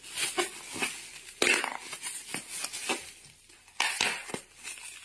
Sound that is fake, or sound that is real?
real